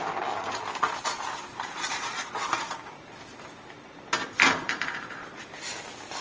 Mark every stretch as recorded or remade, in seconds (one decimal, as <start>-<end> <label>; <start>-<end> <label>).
0.0-1.5 recorded; 1.5-3.4 remade; 3.4-4.2 recorded; 4.2-5.8 remade; 5.8-6.2 recorded